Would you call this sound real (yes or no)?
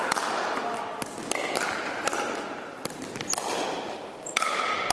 no